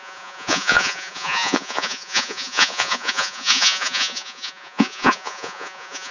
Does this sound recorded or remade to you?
remade